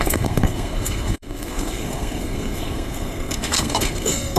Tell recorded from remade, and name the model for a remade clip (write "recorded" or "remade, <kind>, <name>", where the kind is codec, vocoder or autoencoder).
remade, codec, SNAC